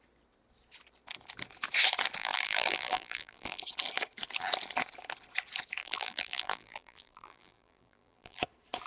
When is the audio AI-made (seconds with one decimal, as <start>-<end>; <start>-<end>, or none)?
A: 2.2-3.6; 5.8-8.4